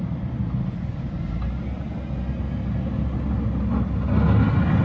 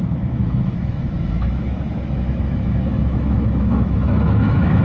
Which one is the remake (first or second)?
second